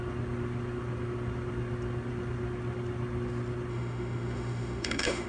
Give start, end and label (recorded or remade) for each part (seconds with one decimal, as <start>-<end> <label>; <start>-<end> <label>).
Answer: 0.0-3.7 recorded; 3.7-5.3 remade